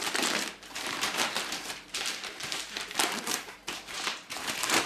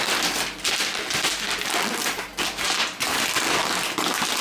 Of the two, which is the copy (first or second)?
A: first